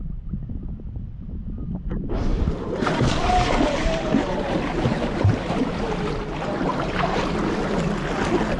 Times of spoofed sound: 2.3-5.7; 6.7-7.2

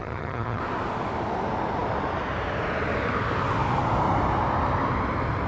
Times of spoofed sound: 0.0-0.6

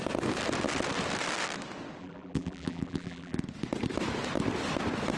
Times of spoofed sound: 2.0-3.4

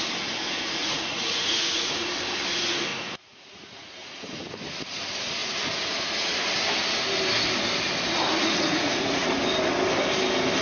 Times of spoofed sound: 0.8-2.1; 2.9-4.5; 5.4-6.4; 8.4-9.3

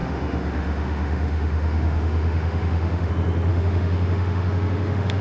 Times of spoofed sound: 0.0-3.1; 3.5-5.2

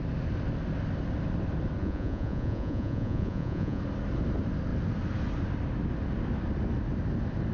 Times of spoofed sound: 1.8-3.8

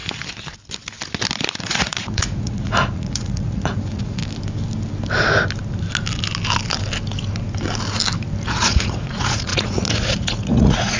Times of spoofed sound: 1.6-4.2; 8.5-11.0

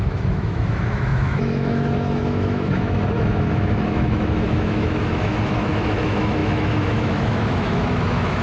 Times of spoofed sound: 0.0-8.4